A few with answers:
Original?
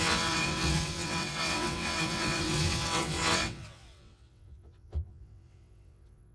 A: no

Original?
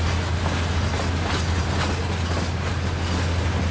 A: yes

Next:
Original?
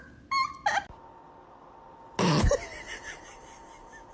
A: yes